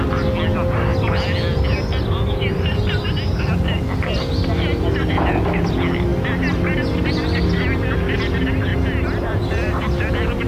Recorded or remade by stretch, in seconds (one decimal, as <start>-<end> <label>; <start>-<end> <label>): 0.0-10.5 recorded